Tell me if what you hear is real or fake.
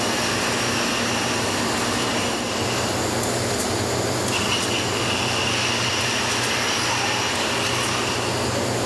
real